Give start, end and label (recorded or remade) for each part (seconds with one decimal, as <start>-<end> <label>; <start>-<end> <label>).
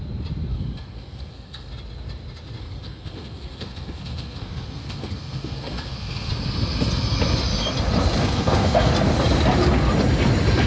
0.0-0.5 recorded; 0.5-1.7 remade; 1.7-2.6 recorded; 2.6-6.3 remade; 6.3-8.2 recorded; 8.2-8.9 remade; 8.9-10.7 recorded